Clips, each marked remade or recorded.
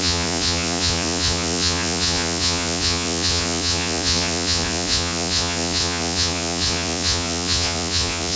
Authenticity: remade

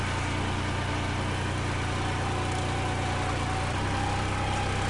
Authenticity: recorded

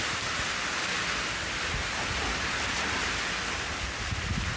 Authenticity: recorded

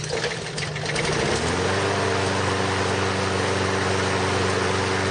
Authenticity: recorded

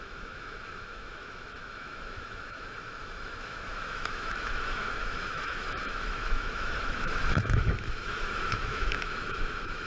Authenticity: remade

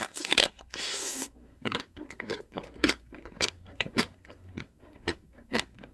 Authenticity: remade